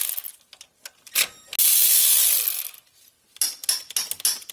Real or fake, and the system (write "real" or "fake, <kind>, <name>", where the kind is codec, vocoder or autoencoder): real